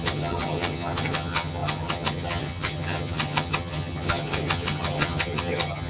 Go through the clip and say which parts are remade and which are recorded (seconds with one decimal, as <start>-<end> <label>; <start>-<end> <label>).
0.0-5.9 remade